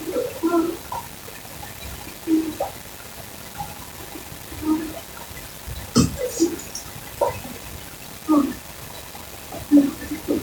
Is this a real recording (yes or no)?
yes